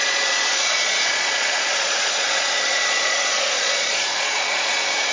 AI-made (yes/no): yes